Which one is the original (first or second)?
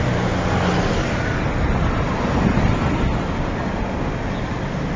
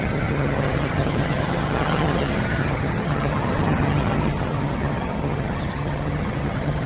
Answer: first